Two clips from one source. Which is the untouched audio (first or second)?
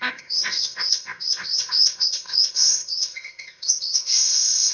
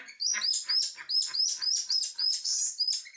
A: second